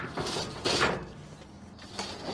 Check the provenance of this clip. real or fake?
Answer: real